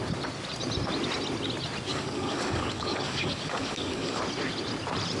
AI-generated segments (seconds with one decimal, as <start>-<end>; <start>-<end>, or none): 1.9-4.2

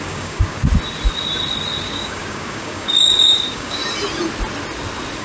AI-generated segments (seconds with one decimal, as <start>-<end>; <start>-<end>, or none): 0.0-0.6; 1.8-3.8

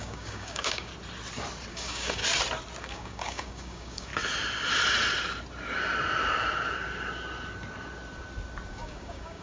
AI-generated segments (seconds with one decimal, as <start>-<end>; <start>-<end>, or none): 0.0-0.9; 1.7-2.2; 2.8-4.1; 8.7-9.4

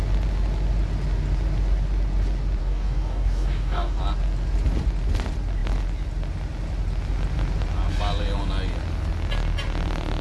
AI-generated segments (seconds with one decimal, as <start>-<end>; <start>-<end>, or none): 2.6-4.0